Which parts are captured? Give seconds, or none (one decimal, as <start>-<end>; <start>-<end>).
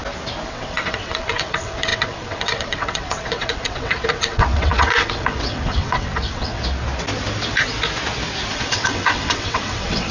0.0-0.5; 6.6-8.5